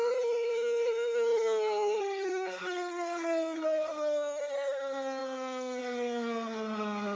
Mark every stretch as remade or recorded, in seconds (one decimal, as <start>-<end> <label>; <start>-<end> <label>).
0.0-7.2 remade